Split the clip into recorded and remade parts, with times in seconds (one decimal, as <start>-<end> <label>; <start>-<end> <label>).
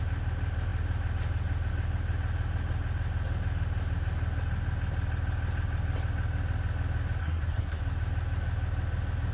0.0-7.2 recorded; 7.2-7.8 remade; 7.8-9.3 recorded